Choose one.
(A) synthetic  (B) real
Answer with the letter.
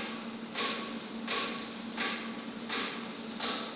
B